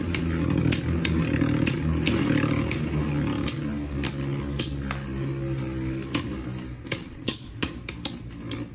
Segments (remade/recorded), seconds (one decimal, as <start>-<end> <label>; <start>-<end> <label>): 0.0-7.0 recorded; 7.0-7.7 remade; 7.7-8.7 recorded